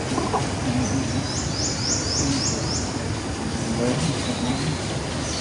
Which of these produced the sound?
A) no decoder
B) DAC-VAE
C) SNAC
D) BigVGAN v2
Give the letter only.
A